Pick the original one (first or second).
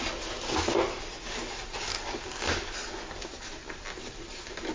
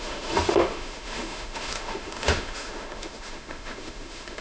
first